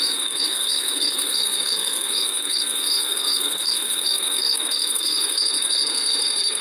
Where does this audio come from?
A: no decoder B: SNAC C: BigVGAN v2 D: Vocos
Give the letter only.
B